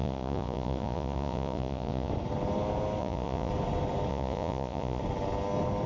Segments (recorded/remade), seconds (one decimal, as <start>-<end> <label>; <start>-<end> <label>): 0.0-2.1 remade; 2.1-3.0 recorded; 3.0-3.5 remade; 3.5-4.1 recorded; 4.1-5.0 remade; 5.0-5.9 recorded